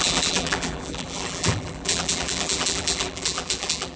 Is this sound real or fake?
fake